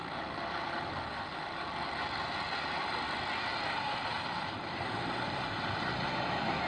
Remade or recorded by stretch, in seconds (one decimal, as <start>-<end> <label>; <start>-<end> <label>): 0.0-4.0 recorded; 4.0-6.7 remade